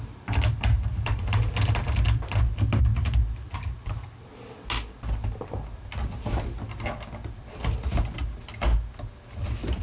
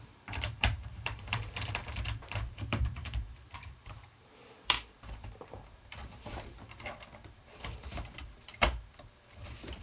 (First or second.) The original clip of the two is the first